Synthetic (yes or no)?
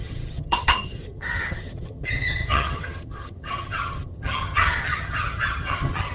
yes